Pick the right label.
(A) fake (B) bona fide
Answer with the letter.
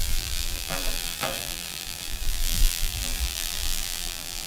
A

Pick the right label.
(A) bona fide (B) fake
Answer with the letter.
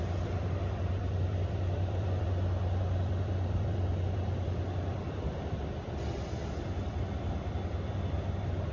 B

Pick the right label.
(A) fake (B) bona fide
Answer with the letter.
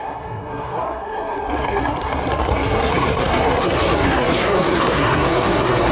A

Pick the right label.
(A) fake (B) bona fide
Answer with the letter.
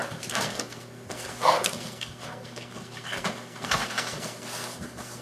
A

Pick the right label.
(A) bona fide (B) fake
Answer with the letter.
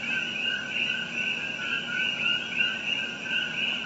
A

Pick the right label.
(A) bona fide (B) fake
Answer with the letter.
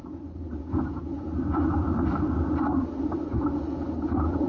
B